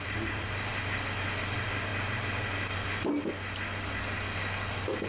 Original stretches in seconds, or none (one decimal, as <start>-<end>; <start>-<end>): 0.7-1.4; 1.9-5.1

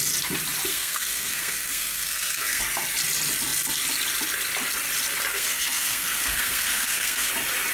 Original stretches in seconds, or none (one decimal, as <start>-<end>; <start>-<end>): 0.0-0.7; 2.6-5.3; 7.3-7.7

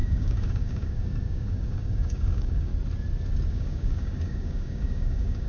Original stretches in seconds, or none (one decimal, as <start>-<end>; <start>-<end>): 2.7-3.5